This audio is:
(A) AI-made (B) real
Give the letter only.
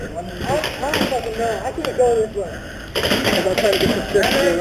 B